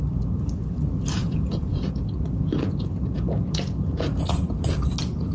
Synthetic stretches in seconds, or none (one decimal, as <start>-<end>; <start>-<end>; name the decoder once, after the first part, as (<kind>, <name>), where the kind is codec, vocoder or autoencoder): 1.2-4.3 (vocoder, Vocos)

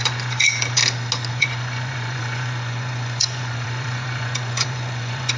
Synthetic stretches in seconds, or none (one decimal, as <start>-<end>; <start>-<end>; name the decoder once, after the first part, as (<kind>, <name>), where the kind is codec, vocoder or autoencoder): 0.0-0.8 (vocoder, Vocos); 1.3-5.4

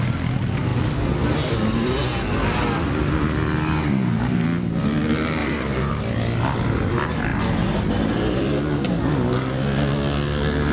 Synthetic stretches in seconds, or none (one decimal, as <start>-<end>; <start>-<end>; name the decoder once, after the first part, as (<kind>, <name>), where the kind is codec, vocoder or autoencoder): 5.4-5.9 (vocoder, Vocos)

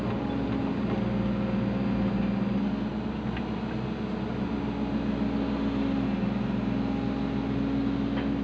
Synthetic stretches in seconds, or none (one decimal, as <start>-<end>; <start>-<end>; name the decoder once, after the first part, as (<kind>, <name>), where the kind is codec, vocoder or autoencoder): none

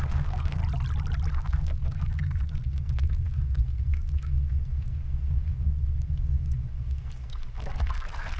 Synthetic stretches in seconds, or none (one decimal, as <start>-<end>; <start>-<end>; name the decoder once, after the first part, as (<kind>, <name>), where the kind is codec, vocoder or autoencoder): 0.0-0.6 (codec, SNAC); 1.3-8.4

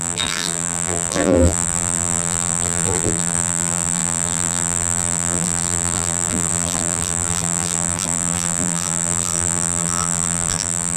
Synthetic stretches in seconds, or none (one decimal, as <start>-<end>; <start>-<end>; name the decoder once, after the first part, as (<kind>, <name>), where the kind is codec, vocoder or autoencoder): 0.0-11.0 (vocoder, BigVGAN v2)